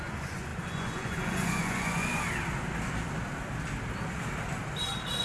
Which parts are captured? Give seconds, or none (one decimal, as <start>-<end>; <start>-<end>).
2.1-5.2